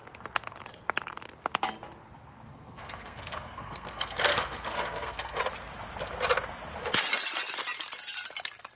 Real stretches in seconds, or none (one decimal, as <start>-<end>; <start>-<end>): 0.0-2.5; 5.4-8.8